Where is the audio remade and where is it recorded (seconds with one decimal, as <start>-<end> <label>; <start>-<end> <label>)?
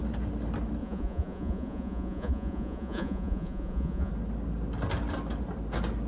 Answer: 0.0-0.8 recorded; 0.8-4.1 remade; 4.1-6.1 recorded